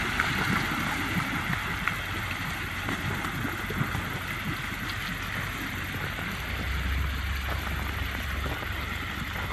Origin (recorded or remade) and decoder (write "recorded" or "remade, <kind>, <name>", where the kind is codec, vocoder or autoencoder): recorded